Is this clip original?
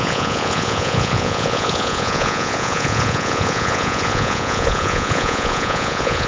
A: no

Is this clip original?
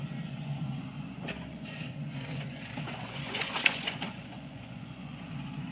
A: no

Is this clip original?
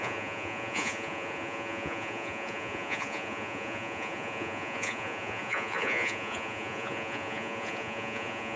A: no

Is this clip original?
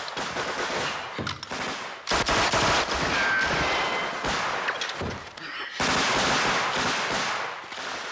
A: yes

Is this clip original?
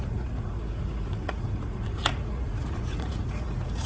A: no